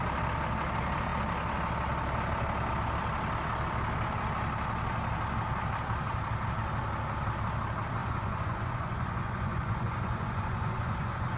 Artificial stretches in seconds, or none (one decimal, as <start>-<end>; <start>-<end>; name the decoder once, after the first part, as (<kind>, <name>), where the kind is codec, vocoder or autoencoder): 8.0-11.4 (vocoder, Vocos)